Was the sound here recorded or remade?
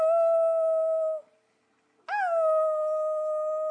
recorded